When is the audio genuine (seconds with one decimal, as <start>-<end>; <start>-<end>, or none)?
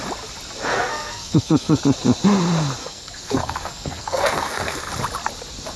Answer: 0.0-0.7; 1.8-2.8; 4.9-5.8